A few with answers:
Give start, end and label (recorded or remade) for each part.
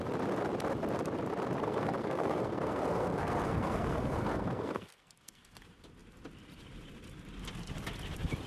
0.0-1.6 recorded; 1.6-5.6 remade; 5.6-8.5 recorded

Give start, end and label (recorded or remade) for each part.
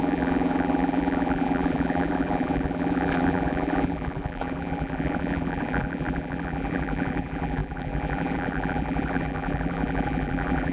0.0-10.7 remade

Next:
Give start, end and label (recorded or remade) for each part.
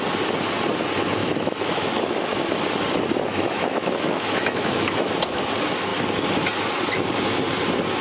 0.0-1.2 recorded; 1.2-2.5 remade; 2.5-3.3 recorded; 3.3-5.1 remade; 5.1-8.0 recorded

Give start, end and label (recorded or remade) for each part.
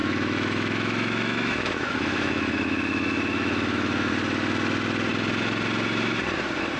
0.0-4.1 remade; 4.1-6.8 recorded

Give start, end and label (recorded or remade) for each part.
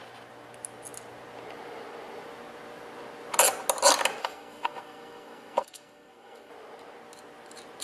0.0-4.2 recorded; 4.2-6.5 remade; 6.5-7.8 recorded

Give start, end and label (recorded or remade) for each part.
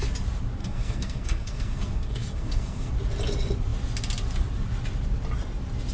0.0-0.6 recorded; 0.6-2.9 remade; 2.9-5.9 recorded